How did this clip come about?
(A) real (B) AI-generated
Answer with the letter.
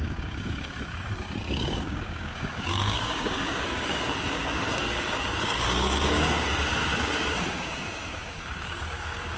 B